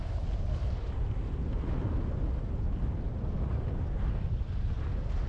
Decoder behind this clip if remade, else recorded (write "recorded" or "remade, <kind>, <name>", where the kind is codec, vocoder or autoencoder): recorded